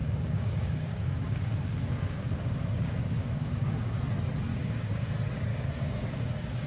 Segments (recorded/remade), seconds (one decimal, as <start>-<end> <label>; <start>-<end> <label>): 0.0-4.0 remade; 4.0-4.5 recorded; 4.5-5.1 remade; 5.1-5.5 recorded; 5.5-6.7 remade